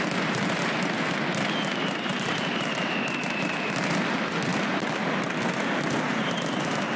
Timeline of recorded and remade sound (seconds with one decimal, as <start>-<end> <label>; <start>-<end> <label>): 0.0-2.1 recorded; 2.1-3.1 remade; 3.1-7.0 recorded